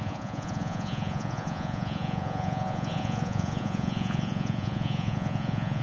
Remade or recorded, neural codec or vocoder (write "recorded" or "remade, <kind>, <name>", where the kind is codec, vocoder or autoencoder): remade, vocoder, Vocos